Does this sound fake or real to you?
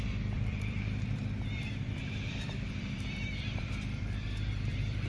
fake